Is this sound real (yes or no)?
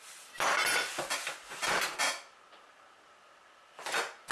yes